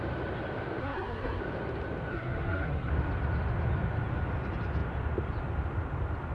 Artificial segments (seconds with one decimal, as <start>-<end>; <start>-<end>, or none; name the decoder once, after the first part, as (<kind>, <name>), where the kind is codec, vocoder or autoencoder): 0.8-1.4 (codec, SNAC); 2.1-2.9